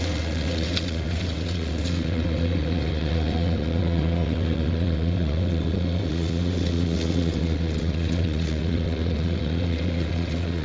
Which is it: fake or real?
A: fake